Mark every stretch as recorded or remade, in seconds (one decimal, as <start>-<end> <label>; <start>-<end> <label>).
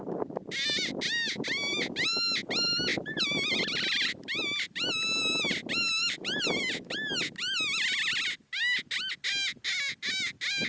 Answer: 0.0-2.9 recorded; 2.9-6.6 remade; 6.6-10.7 recorded